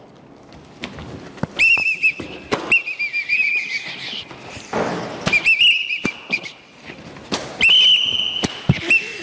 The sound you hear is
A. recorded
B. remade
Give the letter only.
A